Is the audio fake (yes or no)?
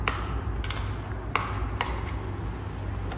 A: no